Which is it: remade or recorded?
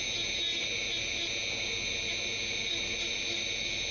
recorded